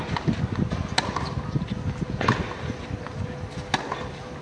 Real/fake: real